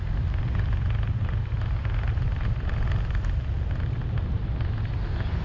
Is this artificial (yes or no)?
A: no